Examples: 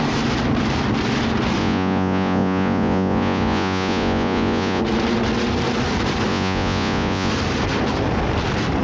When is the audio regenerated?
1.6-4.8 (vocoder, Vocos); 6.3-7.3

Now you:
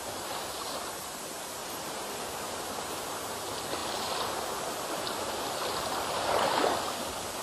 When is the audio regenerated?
1.6-2.3 (vocoder, BigVGAN v2)